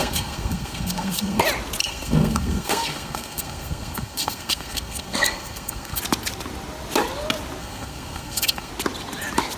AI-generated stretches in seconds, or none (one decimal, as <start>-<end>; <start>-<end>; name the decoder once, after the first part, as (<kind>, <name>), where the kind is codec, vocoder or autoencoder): 0.0-1.4 (codec, SNAC); 1.8-6.0; 7.6-8.7